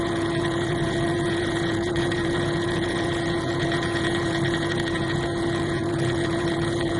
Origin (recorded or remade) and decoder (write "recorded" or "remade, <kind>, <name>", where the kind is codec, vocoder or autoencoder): remade, vocoder, Vocos